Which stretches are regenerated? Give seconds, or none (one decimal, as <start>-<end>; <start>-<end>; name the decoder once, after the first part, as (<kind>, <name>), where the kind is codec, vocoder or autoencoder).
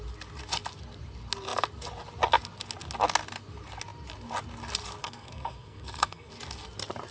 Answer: 5.0-6.3 (codec, SNAC)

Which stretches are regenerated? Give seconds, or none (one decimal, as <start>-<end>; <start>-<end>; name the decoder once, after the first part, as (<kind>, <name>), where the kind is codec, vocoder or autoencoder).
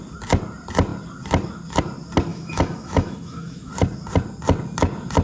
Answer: 2.3-3.7 (autoencoder, DAC-VAE)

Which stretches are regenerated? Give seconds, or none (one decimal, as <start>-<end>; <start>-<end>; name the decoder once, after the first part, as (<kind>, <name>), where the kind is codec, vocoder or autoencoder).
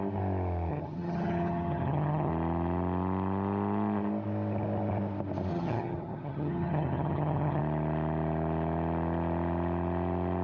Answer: 0.7-2.3 (vocoder, HiFi-GAN); 5.5-7.6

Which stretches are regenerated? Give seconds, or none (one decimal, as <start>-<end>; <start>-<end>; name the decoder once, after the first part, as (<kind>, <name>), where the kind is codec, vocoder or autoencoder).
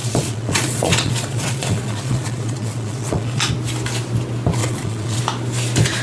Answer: 0.0-3.5 (vocoder, Vocos); 4.6-5.2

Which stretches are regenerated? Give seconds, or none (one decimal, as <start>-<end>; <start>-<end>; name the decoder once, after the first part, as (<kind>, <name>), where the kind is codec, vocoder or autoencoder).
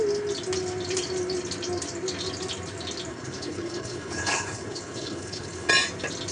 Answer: 3.1-5.7 (codec, HILCodec)